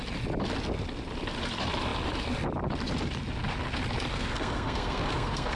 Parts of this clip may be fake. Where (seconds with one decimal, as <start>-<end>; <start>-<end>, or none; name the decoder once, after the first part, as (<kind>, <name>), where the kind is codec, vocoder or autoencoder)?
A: 4.1-5.6 (codec, SNAC)